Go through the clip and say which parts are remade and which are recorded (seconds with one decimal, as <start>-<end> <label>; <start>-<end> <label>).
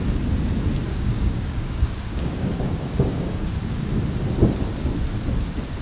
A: 0.0-0.9 recorded; 0.9-3.9 remade; 3.9-5.8 recorded